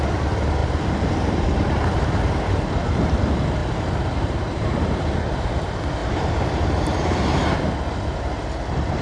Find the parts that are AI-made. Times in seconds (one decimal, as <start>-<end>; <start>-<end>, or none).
0.6-3.2; 3.6-5.0; 6.0-7.6